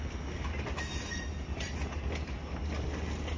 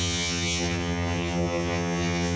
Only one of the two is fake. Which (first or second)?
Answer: second